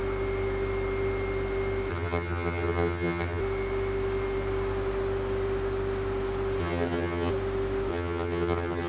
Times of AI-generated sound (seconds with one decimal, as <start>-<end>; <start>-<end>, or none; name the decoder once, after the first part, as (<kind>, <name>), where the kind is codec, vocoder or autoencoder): 1.9-3.4 (vocoder, HiFi-GAN); 6.6-7.3; 7.9-8.9